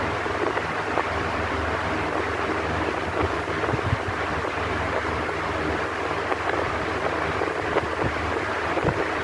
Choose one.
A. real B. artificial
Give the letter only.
B